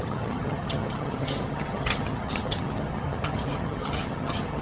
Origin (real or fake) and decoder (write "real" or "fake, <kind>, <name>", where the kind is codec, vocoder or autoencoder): fake, vocoder, HiFi-GAN